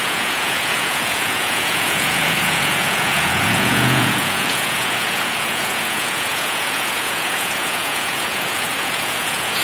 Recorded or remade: remade